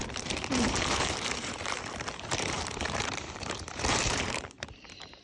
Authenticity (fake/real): fake